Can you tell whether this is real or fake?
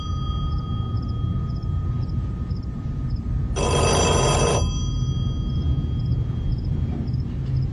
real